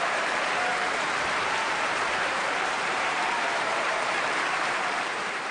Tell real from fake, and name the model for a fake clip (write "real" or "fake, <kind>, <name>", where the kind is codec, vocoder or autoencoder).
fake, vocoder, BigVGAN v2